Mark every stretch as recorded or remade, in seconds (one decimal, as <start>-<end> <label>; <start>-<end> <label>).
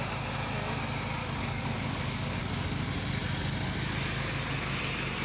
0.0-1.2 recorded; 1.2-2.4 remade; 2.4-5.2 recorded